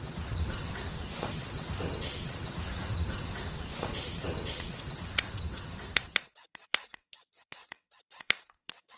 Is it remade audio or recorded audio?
remade